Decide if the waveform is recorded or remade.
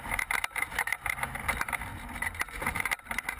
remade